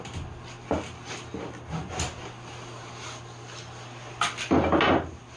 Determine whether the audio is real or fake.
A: real